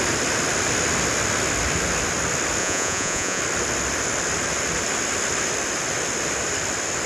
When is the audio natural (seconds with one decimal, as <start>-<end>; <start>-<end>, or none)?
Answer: 0.0-2.6; 3.4-7.1